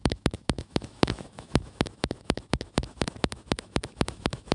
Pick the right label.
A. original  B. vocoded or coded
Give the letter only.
B